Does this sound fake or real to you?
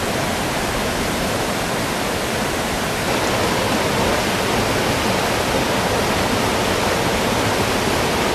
real